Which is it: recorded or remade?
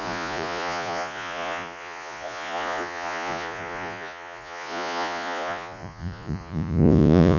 remade